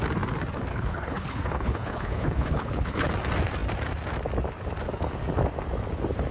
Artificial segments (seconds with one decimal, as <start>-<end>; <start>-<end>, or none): 0.7-3.1